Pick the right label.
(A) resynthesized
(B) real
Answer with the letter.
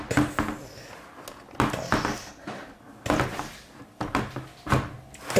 B